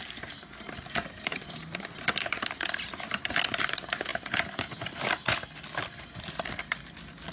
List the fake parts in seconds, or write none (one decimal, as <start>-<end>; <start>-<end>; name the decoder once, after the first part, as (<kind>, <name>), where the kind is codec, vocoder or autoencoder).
none